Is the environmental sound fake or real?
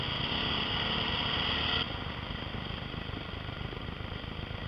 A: real